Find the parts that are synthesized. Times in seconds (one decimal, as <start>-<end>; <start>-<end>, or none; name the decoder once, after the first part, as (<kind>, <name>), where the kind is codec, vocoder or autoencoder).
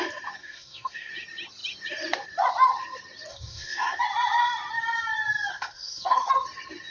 0.4-1.1 (codec, SNAC); 3.3-4.0; 5.5-6.3